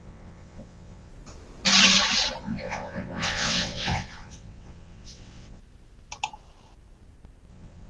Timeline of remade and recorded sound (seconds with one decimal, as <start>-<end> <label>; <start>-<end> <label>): 0.0-1.1 remade; 1.1-2.4 recorded; 2.4-5.6 remade; 5.6-7.5 recorded; 7.5-7.9 remade